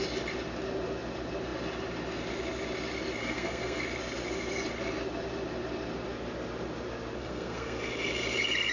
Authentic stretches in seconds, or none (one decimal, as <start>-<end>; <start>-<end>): 0.0-3.2; 3.8-7.2; 7.8-8.7